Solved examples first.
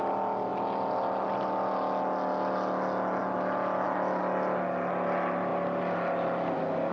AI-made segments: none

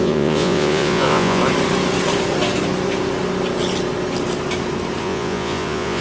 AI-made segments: 0.0-1.4 (vocoder, Vocos); 5.0-6.0